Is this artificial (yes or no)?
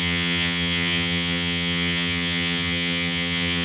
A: yes